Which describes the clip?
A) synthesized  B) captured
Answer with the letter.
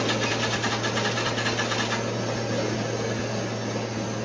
B